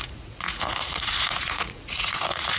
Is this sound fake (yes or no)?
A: yes